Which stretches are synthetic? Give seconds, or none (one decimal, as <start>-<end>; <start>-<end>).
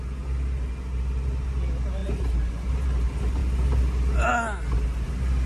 none